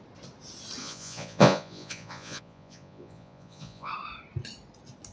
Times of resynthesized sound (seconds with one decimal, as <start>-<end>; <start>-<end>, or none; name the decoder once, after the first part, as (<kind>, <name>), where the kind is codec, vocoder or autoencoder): 0.8-3.9 (vocoder, Vocos)